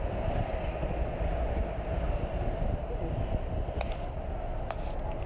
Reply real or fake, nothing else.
real